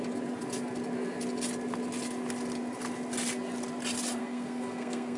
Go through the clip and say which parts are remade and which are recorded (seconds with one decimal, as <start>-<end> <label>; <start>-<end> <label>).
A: 0.0-4.2 recorded; 4.2-5.2 remade

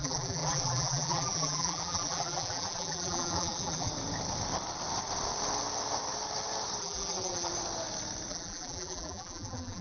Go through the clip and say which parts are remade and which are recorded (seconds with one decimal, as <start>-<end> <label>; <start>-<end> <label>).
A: 0.0-3.9 remade; 3.9-6.8 recorded; 6.8-7.5 remade; 7.5-8.3 recorded; 8.3-9.8 remade

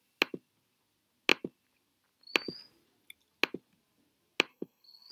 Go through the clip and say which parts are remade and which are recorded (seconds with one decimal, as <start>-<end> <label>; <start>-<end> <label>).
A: 0.0-4.5 recorded; 4.5-5.1 remade

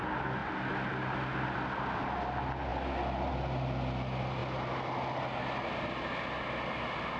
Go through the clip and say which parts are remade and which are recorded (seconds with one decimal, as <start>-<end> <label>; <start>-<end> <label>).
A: 0.0-7.2 recorded

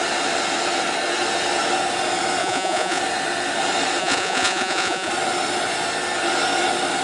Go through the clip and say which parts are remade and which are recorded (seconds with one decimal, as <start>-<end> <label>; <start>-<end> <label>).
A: 0.0-2.4 recorded; 2.4-3.0 remade; 3.0-4.0 recorded; 4.0-5.1 remade; 5.1-7.0 recorded

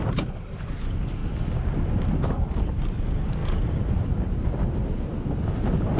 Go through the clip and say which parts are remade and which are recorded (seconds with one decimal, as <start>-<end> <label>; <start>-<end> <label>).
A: 0.0-6.0 recorded

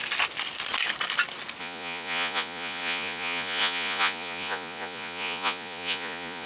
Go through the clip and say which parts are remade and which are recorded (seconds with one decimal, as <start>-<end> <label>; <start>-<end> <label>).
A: 0.0-1.6 recorded; 1.6-6.5 remade